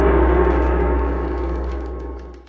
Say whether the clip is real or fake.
fake